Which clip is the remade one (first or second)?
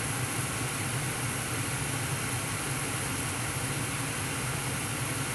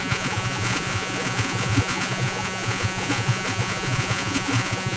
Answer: second